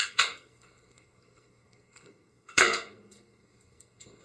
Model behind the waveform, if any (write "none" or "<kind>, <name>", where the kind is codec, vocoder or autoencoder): codec, SNAC